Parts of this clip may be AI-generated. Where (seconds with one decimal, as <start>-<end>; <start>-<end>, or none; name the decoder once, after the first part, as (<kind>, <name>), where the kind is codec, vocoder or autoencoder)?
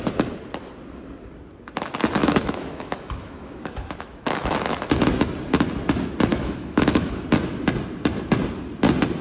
2.2-4.9 (autoencoder, DAC-VAE); 6.3-7.2